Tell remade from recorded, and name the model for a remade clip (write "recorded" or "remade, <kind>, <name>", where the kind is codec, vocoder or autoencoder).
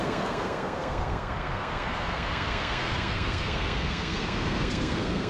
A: remade, codec, SNAC